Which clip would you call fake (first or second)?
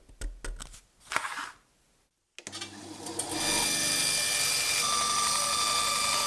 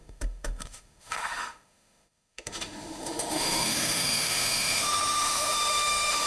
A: second